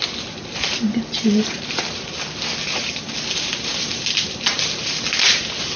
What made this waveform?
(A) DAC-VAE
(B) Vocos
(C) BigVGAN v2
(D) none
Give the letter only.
D